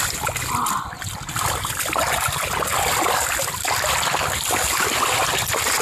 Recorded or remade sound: recorded